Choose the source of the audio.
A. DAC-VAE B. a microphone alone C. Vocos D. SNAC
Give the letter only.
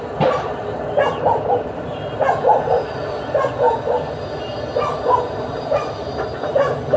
B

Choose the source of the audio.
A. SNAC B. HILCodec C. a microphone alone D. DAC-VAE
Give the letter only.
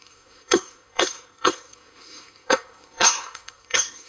A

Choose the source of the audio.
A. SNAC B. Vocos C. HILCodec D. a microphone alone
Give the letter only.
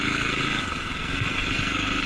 A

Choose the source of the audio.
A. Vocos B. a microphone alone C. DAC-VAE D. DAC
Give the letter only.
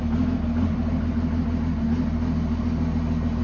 B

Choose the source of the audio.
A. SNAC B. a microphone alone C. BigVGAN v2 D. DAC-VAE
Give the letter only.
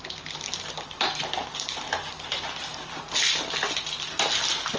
B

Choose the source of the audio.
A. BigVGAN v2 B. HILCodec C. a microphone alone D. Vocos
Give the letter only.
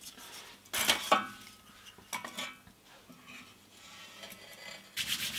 C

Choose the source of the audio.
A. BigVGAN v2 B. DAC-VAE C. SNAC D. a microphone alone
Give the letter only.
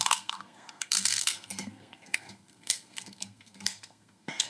C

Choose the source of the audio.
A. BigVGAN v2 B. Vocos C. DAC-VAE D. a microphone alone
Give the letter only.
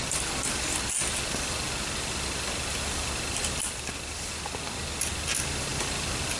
D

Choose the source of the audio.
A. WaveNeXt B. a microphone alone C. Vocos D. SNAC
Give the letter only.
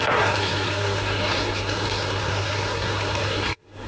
D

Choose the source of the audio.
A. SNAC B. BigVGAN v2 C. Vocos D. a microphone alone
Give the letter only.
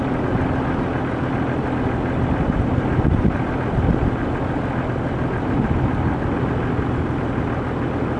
D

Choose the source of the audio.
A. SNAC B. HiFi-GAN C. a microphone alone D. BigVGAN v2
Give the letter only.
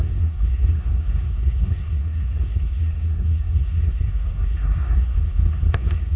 A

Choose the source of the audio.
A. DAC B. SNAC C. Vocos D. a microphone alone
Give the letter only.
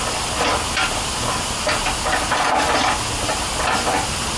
D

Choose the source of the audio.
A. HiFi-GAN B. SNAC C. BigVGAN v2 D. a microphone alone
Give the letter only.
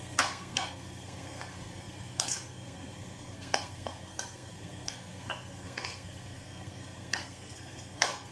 B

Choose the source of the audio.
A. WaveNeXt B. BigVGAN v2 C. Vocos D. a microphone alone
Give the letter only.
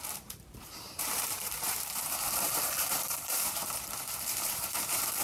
B